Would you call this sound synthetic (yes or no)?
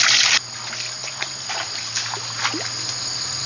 no